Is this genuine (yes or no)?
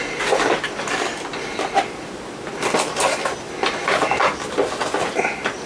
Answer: yes